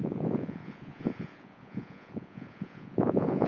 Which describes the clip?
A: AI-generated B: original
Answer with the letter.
A